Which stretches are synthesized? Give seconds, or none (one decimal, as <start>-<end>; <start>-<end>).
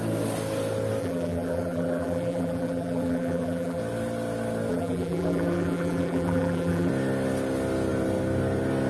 1.0-3.8; 4.7-6.9